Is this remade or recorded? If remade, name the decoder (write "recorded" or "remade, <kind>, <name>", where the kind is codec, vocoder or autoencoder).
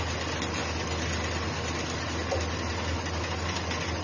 recorded